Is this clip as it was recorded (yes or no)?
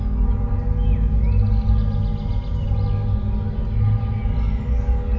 yes